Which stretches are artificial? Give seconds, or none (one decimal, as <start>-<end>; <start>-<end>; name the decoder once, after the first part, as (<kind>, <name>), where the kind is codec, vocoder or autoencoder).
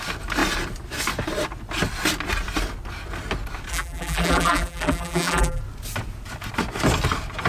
3.7-5.6 (vocoder, BigVGAN v2)